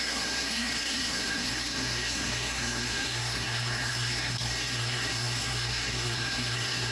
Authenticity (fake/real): fake